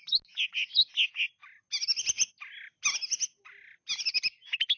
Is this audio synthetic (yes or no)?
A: no